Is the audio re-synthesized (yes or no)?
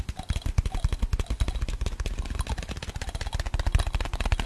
no